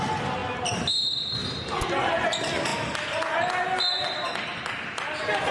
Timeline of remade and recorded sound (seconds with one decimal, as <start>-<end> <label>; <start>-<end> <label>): 0.0-5.5 recorded